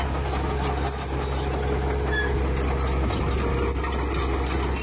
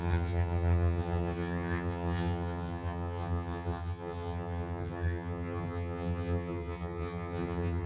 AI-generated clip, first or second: second